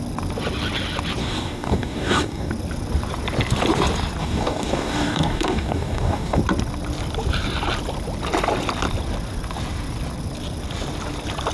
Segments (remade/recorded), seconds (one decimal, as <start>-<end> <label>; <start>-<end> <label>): 0.0-1.2 recorded; 1.2-2.5 remade; 2.5-4.2 recorded; 4.2-6.4 remade; 6.4-11.5 recorded